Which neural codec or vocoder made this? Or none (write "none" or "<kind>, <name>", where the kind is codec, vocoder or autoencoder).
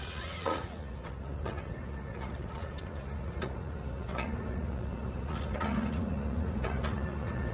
vocoder, Vocos